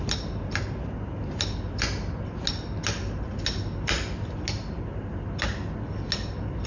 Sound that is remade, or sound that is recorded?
recorded